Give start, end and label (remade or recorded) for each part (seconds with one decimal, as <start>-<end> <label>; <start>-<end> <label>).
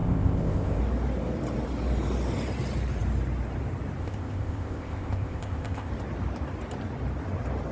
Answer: 0.0-0.8 remade; 0.8-4.0 recorded; 4.0-5.9 remade; 5.9-7.7 recorded